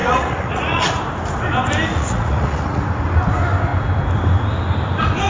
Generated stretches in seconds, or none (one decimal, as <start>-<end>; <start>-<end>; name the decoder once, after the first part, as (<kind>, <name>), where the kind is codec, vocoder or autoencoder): 0.0-0.8 (vocoder, Vocos); 1.9-2.8